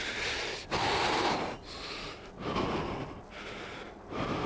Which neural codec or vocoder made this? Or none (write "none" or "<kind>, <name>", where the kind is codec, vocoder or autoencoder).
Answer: none